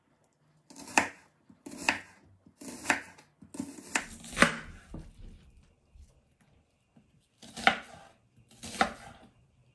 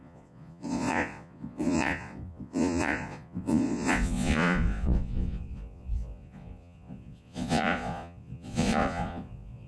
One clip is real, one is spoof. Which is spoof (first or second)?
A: second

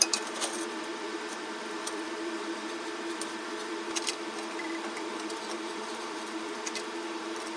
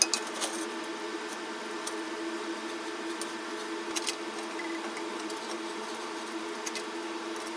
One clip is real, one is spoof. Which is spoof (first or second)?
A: first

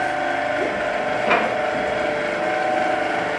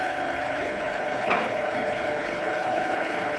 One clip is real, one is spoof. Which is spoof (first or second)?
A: second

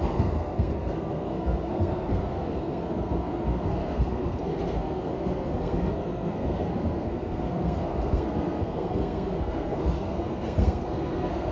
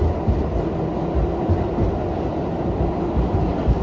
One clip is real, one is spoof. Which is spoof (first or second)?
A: first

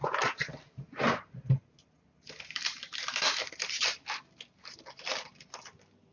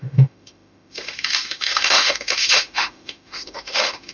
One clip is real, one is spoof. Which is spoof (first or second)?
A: second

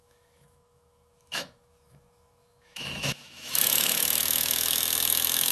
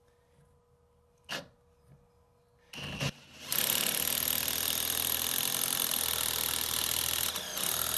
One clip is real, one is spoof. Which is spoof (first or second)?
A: first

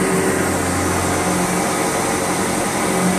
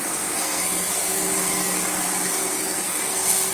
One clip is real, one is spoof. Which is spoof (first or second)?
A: second